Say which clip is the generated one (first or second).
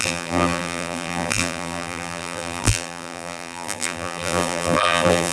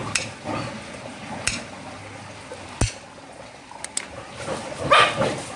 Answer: first